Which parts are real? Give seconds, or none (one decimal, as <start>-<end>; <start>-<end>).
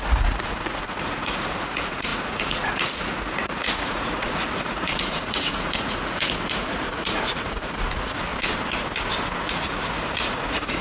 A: 8.3-9.5